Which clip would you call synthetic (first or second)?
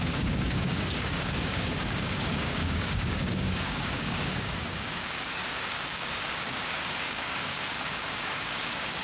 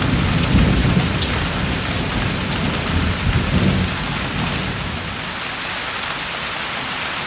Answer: first